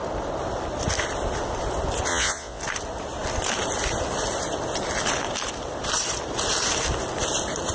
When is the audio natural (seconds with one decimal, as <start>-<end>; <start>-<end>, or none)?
0.0-2.1; 2.6-7.7